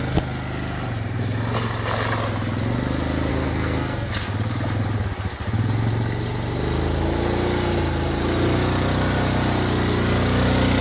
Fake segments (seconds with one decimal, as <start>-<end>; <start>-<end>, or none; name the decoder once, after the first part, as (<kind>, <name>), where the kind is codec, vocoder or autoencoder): 3.3-4.1 (codec, SNAC)